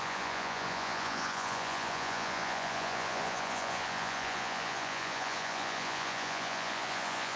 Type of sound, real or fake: fake